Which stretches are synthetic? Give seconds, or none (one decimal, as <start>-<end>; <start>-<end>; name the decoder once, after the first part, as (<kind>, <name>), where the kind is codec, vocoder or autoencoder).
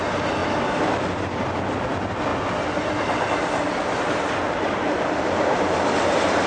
none